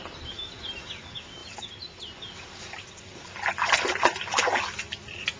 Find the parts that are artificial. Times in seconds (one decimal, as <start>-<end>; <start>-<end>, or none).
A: none